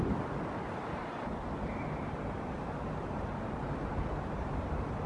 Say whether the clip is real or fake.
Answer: real